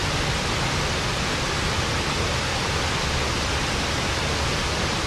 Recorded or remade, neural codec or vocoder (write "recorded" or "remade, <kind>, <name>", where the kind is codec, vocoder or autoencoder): recorded